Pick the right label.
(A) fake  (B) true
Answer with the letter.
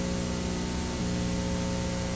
B